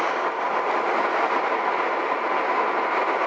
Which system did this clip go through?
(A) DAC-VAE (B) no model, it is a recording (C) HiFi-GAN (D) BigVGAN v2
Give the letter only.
B